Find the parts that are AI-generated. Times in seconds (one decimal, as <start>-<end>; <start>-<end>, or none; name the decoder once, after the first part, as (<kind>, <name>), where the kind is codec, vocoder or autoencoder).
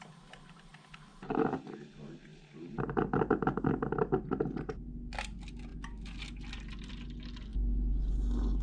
none